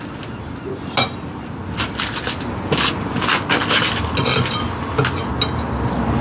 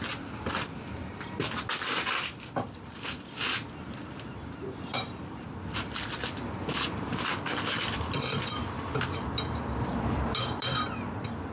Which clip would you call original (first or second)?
first